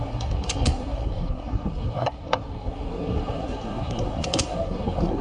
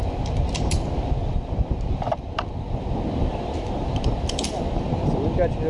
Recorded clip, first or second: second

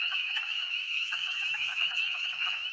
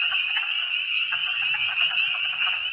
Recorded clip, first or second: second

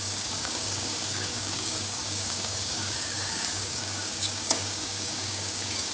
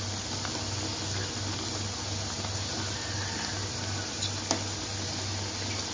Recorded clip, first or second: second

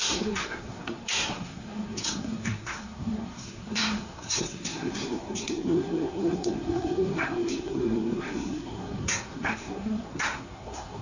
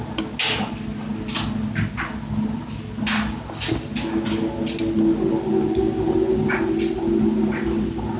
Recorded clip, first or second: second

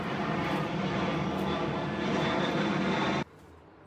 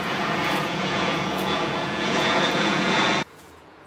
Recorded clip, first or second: first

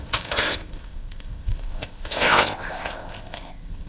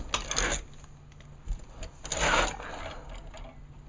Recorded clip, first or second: second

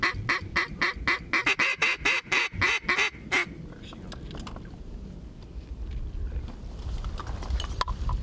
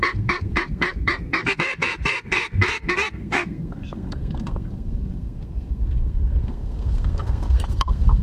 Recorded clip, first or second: first